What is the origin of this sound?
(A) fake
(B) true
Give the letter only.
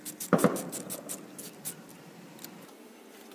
B